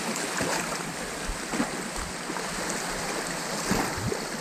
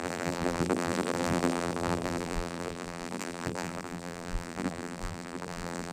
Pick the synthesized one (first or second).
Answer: second